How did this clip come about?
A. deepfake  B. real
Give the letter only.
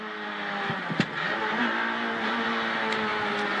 B